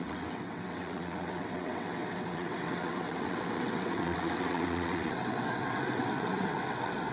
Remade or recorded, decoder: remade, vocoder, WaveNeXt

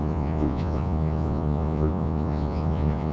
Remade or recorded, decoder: remade, vocoder, Vocos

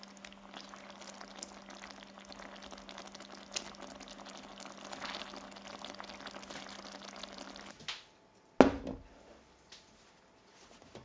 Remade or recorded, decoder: recorded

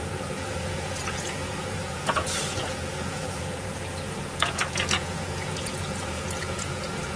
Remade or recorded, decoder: remade, vocoder, Vocos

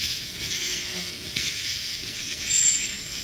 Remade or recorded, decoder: remade, codec, SNAC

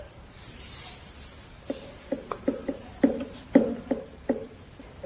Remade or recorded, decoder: recorded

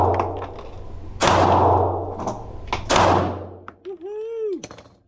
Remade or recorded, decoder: recorded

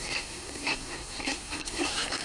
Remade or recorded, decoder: remade, codec, SNAC